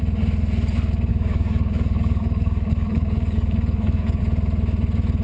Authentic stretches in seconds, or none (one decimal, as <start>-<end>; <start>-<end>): 0.0-1.1; 4.2-5.2